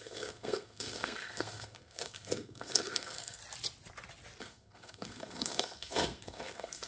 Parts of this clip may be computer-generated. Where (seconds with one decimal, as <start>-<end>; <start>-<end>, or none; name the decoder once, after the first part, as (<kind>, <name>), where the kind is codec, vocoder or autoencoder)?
0.0-3.4 (codec, SNAC); 4.4-6.9